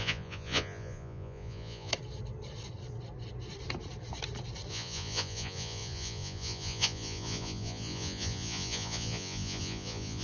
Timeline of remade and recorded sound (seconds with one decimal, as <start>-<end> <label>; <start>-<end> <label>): 0.0-1.9 remade; 1.9-4.7 recorded; 4.7-10.2 remade